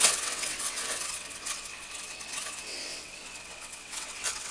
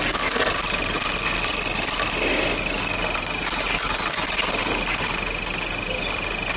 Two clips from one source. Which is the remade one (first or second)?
first